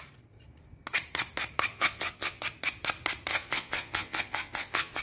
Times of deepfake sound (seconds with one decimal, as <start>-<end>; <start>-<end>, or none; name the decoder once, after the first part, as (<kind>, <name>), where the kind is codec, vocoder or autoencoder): 1.7-2.4 (vocoder, Vocos); 3.3-5.0